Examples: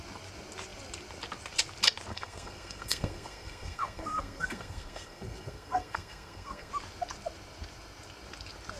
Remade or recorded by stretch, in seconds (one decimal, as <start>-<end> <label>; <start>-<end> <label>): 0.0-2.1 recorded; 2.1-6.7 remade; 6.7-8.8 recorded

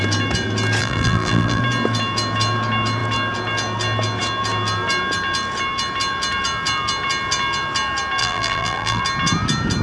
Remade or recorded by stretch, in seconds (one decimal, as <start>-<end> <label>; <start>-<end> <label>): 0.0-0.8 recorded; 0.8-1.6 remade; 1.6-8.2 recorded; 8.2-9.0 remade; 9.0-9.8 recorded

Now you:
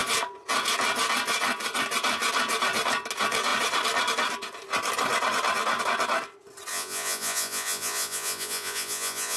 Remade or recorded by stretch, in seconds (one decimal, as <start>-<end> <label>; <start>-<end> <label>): 0.0-6.7 recorded; 6.7-9.4 remade